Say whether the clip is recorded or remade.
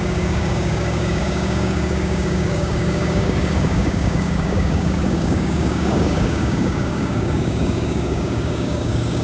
remade